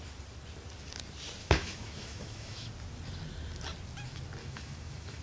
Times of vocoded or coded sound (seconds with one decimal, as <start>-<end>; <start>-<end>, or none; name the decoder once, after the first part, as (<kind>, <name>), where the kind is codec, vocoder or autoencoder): 1.4-2.7 (autoencoder, DAC-VAE); 4.4-5.2